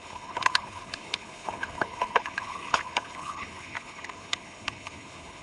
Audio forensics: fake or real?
fake